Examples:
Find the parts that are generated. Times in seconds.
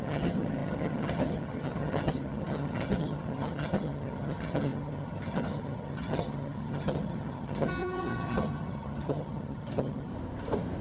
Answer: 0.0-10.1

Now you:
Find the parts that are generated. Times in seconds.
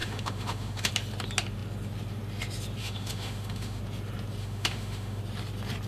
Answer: 0.0-0.9; 2.8-3.8; 4.4-5.2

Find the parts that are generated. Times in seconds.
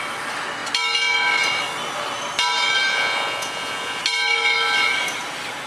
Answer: 2.9-4.0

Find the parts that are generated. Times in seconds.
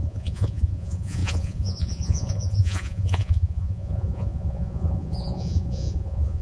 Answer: 0.0-6.4